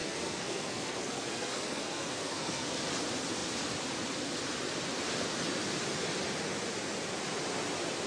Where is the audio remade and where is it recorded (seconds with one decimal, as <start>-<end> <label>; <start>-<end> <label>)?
0.0-2.7 remade; 2.7-8.1 recorded